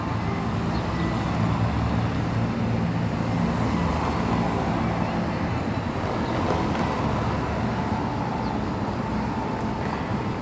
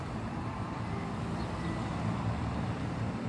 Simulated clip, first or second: second